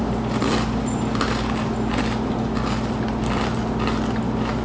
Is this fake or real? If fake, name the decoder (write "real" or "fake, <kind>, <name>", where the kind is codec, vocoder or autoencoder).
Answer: real